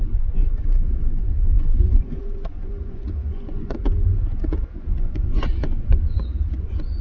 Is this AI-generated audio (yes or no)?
yes